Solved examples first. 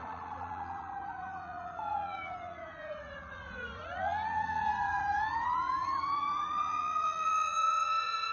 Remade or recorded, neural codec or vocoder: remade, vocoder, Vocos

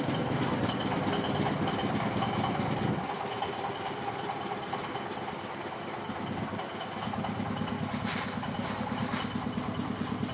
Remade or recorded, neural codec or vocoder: recorded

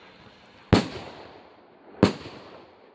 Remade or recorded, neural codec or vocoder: recorded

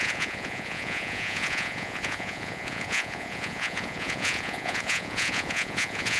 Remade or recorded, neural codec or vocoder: remade, vocoder, Vocos